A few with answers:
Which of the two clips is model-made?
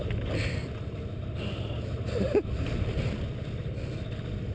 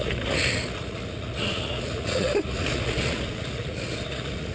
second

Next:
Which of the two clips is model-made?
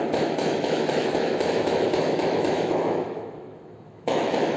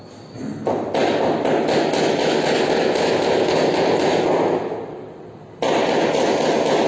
first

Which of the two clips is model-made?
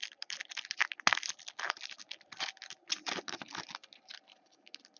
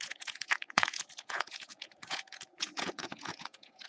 second